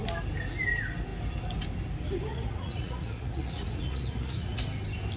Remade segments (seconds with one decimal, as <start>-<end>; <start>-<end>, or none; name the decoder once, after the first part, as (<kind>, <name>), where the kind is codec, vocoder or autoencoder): 2.3-4.6 (vocoder, Vocos)